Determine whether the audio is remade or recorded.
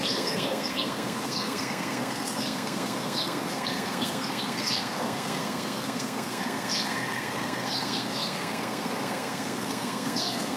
remade